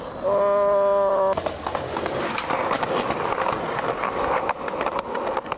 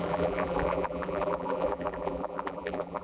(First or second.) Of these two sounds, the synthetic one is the second